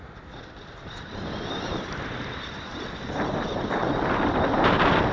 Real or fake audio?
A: real